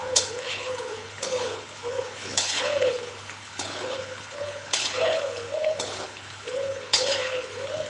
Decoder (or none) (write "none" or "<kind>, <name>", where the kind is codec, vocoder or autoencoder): codec, HILCodec